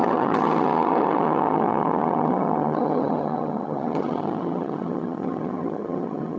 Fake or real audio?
fake